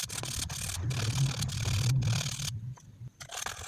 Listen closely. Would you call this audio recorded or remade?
recorded